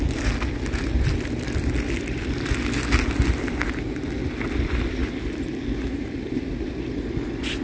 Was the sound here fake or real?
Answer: real